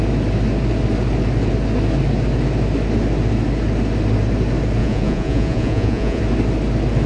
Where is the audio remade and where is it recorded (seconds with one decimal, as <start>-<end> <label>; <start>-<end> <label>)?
0.0-4.8 recorded; 4.8-6.2 remade; 6.2-7.1 recorded